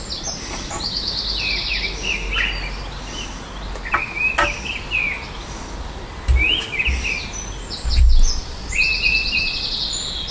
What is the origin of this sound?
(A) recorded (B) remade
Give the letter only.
A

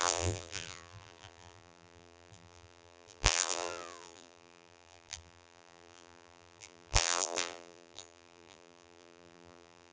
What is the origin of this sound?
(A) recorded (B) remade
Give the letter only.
B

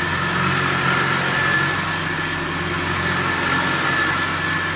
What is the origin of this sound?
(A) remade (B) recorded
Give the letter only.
B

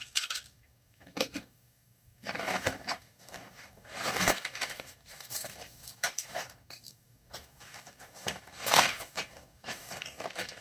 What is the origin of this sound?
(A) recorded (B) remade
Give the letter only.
B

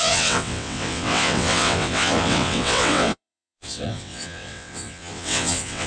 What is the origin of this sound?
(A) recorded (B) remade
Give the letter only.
B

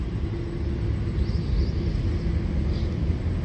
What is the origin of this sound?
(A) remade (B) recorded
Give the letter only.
B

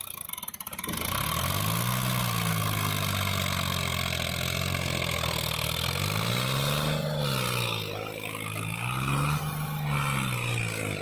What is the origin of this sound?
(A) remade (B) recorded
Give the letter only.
B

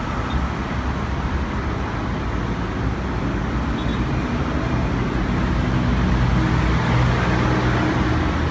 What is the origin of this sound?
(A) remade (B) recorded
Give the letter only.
B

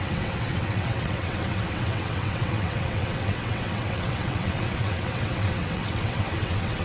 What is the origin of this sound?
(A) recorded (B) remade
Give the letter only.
B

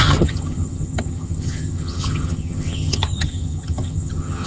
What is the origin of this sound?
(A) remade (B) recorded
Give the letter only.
A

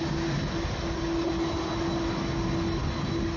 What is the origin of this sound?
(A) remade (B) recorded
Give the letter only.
B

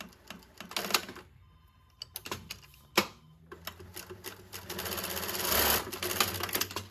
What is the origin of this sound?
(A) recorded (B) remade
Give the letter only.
A